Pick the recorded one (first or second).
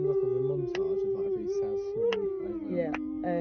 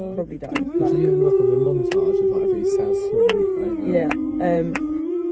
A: first